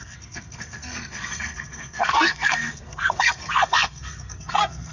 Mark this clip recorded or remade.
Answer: remade